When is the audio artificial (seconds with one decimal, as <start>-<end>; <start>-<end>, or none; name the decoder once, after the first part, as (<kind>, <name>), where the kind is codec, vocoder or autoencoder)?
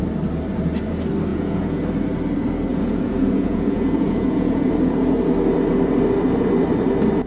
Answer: 1.3-1.8 (vocoder, Vocos); 2.7-4.7